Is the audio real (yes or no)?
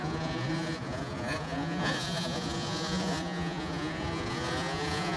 no